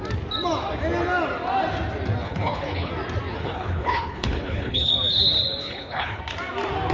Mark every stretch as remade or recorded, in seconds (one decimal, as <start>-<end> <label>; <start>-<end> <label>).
0.0-2.2 recorded; 2.2-2.9 remade; 2.9-3.4 recorded; 3.4-4.9 remade; 4.9-5.6 recorded; 5.6-6.2 remade; 6.2-6.9 recorded